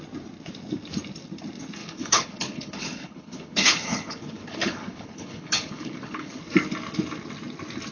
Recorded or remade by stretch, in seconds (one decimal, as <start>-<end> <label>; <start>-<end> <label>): 0.0-1.8 recorded; 1.8-6.4 remade; 6.4-7.9 recorded